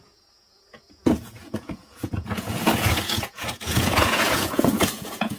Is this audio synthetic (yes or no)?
yes